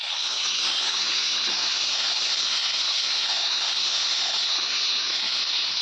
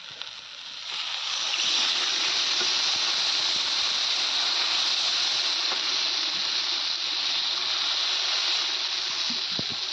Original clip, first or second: second